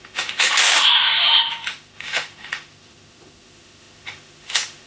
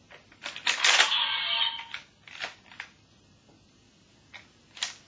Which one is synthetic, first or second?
first